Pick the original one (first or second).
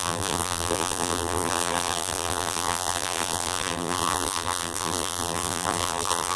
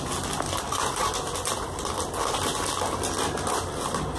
second